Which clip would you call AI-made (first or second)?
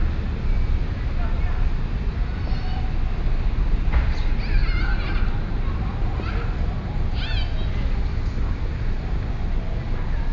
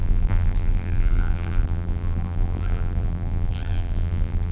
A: second